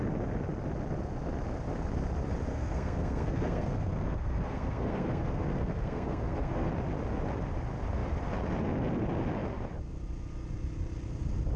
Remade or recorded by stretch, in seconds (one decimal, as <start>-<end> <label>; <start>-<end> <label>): 0.0-2.5 recorded; 2.5-6.7 remade; 6.7-11.6 recorded